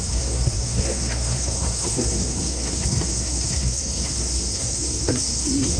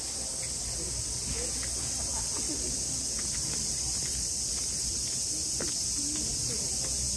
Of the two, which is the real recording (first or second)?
second